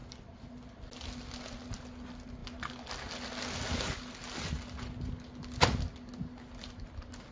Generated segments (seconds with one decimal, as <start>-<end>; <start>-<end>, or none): none